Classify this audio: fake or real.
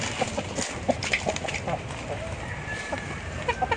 real